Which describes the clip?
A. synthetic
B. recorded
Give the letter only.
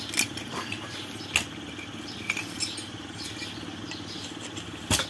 B